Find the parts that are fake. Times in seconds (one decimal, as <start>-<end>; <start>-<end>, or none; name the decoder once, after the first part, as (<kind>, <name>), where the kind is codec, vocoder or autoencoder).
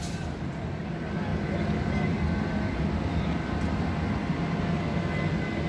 none